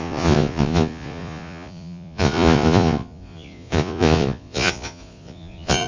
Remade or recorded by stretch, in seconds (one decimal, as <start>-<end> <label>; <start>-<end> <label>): 0.0-5.9 remade